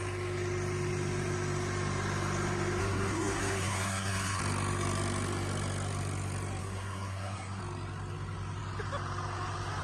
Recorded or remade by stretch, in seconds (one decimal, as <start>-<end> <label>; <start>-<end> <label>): 0.0-2.8 recorded; 2.8-4.4 remade; 4.4-6.6 recorded; 6.6-7.6 remade; 7.6-9.8 recorded